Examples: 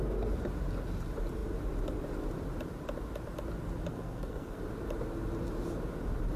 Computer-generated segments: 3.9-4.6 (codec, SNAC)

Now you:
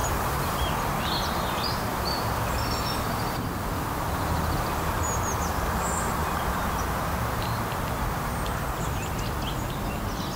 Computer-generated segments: 0.0-1.5 (vocoder, BigVGAN v2)

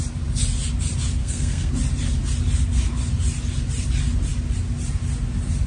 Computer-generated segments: 1.2-1.7 (codec, SNAC)

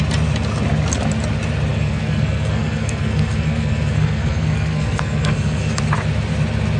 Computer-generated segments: 1.7-5.8 (codec, SNAC)

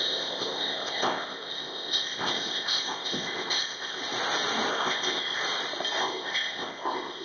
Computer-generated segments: 0.0-4.0 (codec, ZipCodec); 4.7-5.4; 6.0-7.2